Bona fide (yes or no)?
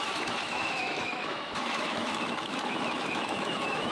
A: no